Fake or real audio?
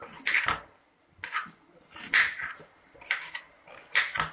real